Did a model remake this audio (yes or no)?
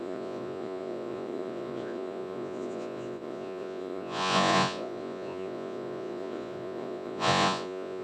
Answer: yes